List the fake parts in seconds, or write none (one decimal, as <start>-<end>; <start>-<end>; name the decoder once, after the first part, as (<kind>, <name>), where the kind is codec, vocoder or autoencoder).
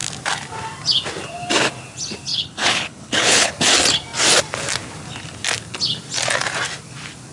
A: 2.3-3.5 (codec, HILCodec)